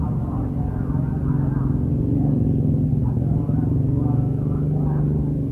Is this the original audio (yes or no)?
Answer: yes